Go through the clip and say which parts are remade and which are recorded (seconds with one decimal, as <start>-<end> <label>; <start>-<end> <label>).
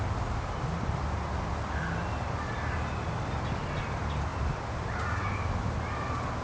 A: 0.0-6.4 recorded